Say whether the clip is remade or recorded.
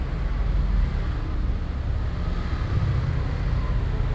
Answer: recorded